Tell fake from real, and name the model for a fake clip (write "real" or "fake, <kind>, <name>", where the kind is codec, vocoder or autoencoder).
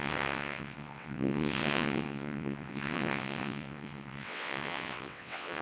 fake, vocoder, WaveNeXt